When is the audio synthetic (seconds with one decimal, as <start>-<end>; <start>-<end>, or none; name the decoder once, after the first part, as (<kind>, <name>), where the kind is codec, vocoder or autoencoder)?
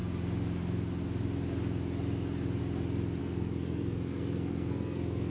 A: 3.2-5.3 (codec, SNAC)